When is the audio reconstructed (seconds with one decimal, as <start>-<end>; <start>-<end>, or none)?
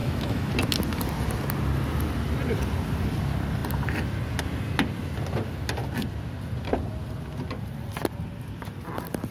0.0-0.5